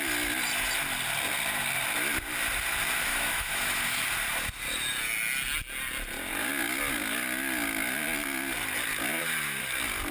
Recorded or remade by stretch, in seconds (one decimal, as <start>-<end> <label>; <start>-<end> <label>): 0.0-3.1 recorded; 3.1-4.0 remade; 4.0-10.1 recorded